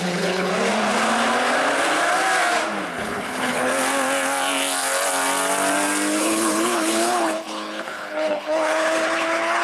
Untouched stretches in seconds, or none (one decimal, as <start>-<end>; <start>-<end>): 0.5-2.9; 3.7-6.2